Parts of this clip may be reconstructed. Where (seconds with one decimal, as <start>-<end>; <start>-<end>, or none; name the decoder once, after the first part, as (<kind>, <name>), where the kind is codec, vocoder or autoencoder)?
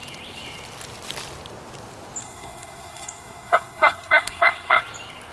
2.2-4.8 (codec, SNAC)